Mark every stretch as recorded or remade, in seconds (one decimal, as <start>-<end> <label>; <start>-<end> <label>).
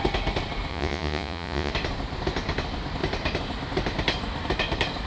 0.0-0.7 recorded; 0.7-1.7 remade; 1.7-5.1 recorded